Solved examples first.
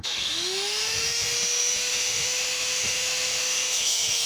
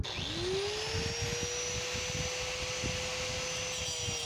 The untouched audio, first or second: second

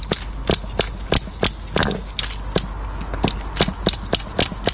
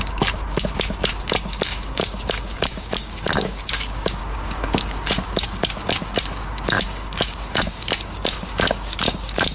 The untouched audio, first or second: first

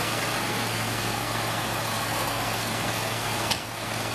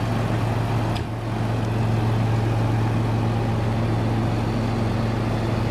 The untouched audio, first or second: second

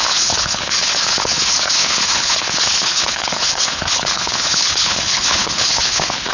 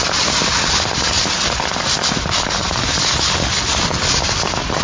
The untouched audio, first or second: second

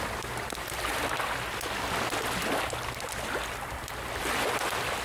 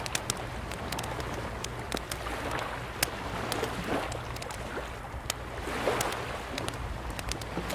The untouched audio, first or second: second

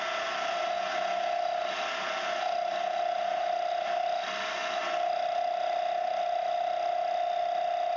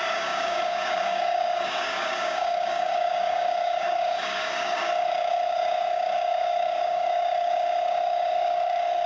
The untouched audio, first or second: first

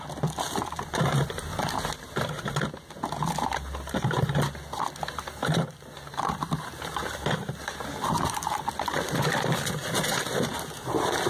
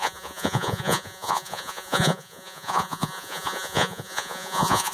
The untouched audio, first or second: first